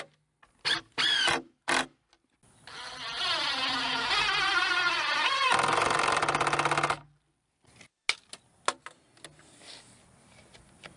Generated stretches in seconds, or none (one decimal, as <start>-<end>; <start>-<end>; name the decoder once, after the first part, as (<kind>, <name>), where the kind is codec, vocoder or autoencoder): none